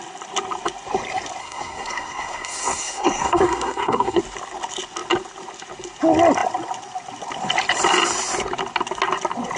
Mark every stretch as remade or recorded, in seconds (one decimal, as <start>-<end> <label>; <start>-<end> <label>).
0.0-1.4 recorded; 1.4-4.2 remade; 4.2-9.6 recorded